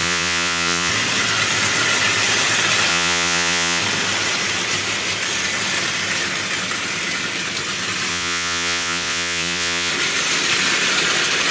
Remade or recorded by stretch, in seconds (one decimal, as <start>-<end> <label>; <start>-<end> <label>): 0.0-0.9 remade; 0.9-2.9 recorded; 2.9-3.8 remade; 3.8-8.1 recorded; 8.1-9.9 remade; 9.9-11.5 recorded